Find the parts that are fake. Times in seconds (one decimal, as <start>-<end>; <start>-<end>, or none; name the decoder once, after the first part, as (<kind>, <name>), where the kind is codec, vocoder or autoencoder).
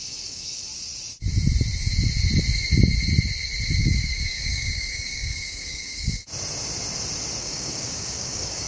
0.0-0.7 (codec, DAC); 3.8-6.2; 7.4-8.7